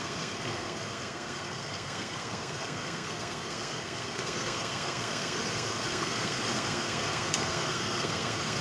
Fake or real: fake